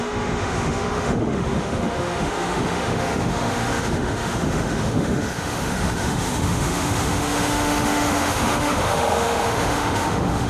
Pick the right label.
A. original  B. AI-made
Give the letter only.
B